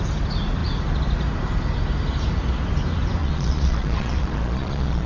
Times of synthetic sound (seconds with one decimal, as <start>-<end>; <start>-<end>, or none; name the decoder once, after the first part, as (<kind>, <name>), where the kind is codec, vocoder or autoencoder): 3.2-5.1 (vocoder, Vocos)